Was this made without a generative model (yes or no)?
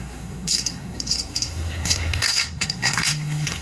no